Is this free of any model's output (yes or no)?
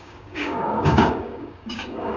no